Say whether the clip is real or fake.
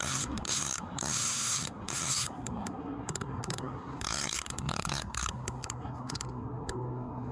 fake